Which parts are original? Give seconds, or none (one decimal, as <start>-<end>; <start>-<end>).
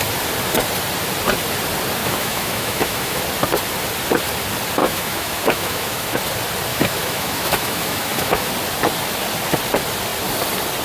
0.0-2.0; 3.2-4.8; 6.2-6.7; 8.5-10.8